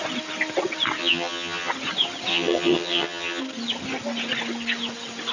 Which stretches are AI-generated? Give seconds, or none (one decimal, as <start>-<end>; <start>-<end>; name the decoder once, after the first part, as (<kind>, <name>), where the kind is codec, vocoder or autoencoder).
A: 1.0-1.7 (vocoder, HiFi-GAN); 2.3-3.4